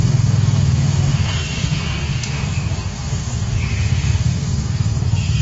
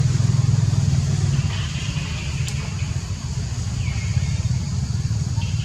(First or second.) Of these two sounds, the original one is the second